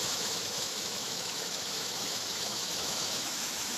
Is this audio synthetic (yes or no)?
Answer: yes